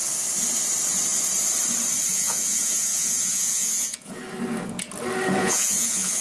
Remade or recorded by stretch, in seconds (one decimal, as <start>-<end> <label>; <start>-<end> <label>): 0.0-2.1 recorded; 2.1-4.2 remade; 4.2-5.4 recorded; 5.4-6.2 remade